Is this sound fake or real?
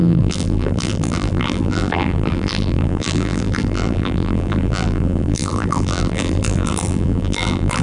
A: fake